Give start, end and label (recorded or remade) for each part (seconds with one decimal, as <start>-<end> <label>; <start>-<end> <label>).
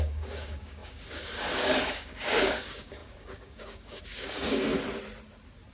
0.0-4.7 remade; 4.7-5.7 recorded